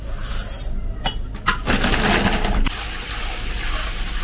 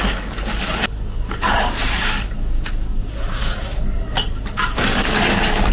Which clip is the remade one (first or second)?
second